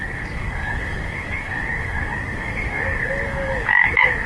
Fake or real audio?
fake